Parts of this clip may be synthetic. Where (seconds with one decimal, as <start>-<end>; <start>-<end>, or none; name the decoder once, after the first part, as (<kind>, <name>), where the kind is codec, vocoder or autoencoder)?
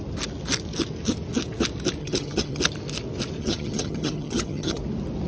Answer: 2.0-2.6 (vocoder, HiFi-GAN); 3.4-4.8